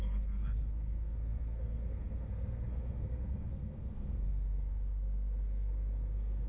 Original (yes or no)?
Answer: no